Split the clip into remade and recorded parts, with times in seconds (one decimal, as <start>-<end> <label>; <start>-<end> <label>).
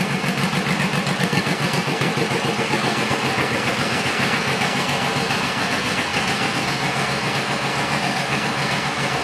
0.0-0.4 remade; 0.4-1.2 recorded; 1.2-2.1 remade; 2.1-2.6 recorded; 2.6-9.2 remade